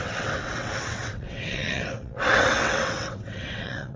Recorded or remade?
remade